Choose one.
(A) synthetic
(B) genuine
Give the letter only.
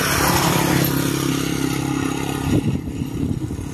B